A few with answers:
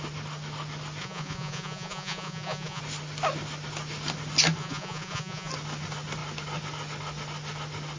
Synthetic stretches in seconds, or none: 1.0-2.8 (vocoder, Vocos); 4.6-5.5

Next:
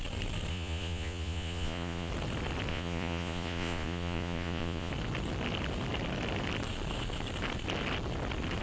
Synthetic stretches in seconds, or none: 0.5-2.1 (vocoder, Vocos); 2.7-4.9

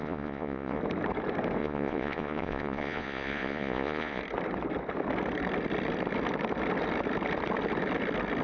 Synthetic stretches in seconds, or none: 0.0-0.8 (vocoder, Vocos); 1.6-4.2